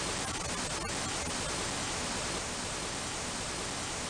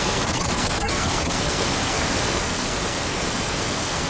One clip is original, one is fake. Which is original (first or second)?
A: first